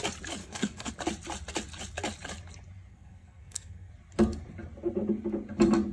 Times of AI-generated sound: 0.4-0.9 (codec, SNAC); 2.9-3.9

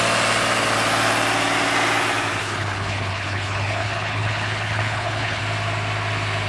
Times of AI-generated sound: 2.4-5.4 (codec, HILCodec)

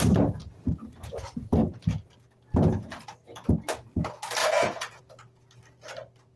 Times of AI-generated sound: 4.4-5.0 (vocoder, Vocos)

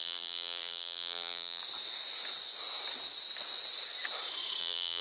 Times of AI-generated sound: 0.0-1.6 (vocoder, BigVGAN v2); 4.6-5.0

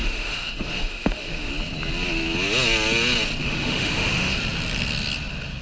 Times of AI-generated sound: 0.0-1.5 (autoencoder, DAC-VAE); 3.4-4.4

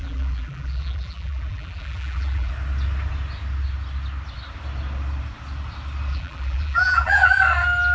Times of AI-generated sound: 0.0-2.5 (vocoder, BigVGAN v2); 6.1-7.4

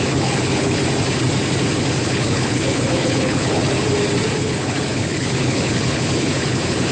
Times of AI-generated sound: 0.0-0.8 (codec, HILCodec); 2.0-3.6; 4.4-6.9